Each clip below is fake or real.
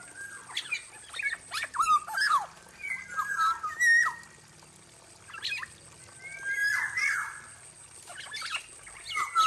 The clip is real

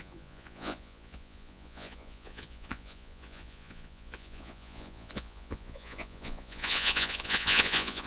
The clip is fake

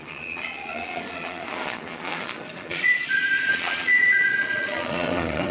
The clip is fake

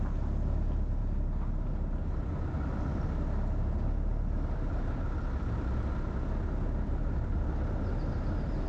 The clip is real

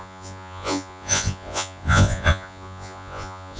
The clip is fake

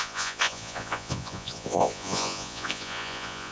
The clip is fake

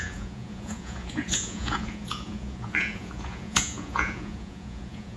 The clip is fake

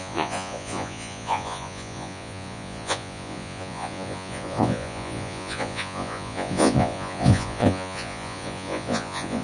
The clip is fake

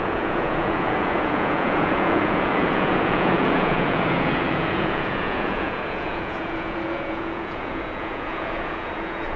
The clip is fake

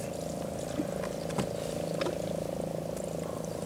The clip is real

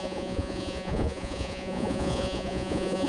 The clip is fake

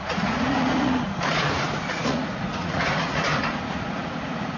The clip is fake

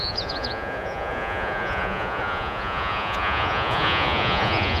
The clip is fake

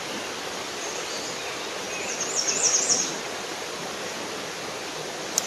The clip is real